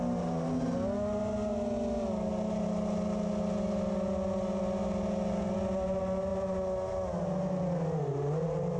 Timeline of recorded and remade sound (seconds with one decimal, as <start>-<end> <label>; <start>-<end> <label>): 0.0-8.8 recorded